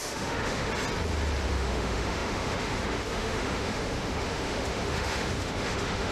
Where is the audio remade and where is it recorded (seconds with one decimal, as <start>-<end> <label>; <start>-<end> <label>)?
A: 0.0-0.7 remade; 0.7-1.5 recorded; 1.5-6.1 remade